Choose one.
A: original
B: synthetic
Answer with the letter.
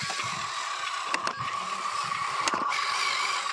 A